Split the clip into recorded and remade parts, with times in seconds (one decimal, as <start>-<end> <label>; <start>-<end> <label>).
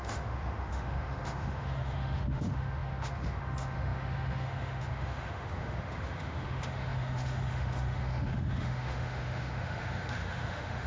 0.0-10.9 remade